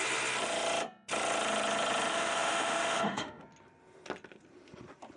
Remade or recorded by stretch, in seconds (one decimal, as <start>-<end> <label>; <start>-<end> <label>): 0.0-2.1 recorded; 2.1-3.4 remade; 3.4-5.2 recorded